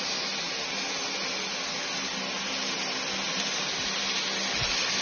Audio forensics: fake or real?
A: real